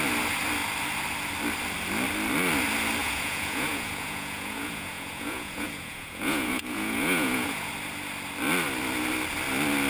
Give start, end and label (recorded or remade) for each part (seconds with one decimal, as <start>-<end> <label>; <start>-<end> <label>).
0.0-3.0 recorded; 3.0-7.7 remade; 7.7-9.9 recorded